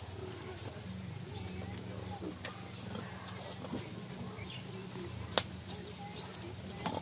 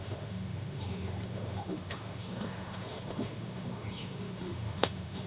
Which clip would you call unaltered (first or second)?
first